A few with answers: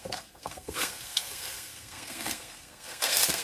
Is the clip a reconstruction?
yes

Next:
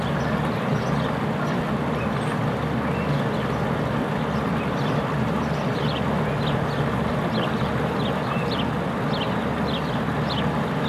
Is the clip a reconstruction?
no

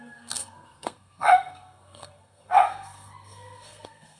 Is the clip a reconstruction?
yes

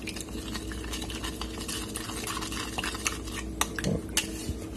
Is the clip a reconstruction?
no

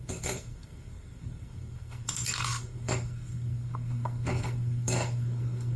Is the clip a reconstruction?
yes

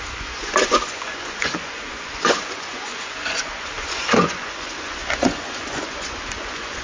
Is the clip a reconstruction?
yes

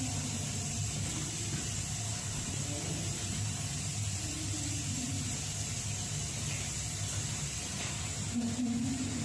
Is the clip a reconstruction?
no